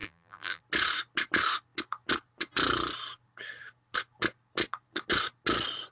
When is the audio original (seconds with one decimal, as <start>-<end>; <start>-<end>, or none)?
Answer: 0.6-5.9